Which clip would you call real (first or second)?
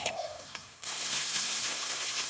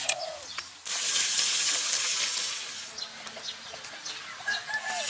second